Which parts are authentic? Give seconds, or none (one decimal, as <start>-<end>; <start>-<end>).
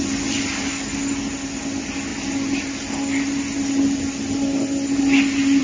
0.0-5.6